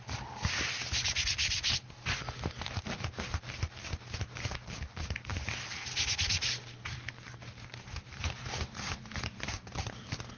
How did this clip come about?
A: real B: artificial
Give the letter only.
A